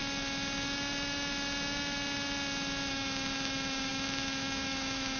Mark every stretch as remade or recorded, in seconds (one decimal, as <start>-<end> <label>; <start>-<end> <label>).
0.0-2.9 recorded; 2.9-5.2 remade